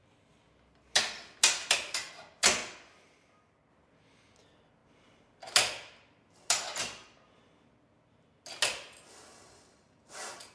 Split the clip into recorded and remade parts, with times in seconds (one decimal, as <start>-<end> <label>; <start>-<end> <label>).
0.0-10.5 recorded